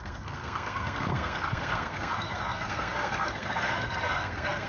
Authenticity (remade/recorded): remade